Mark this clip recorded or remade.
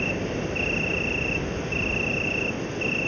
recorded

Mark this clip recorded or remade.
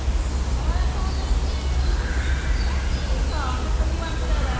recorded